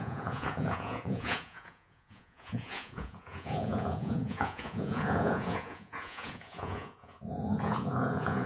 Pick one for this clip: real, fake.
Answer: fake